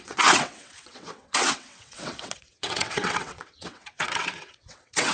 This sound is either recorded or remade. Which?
remade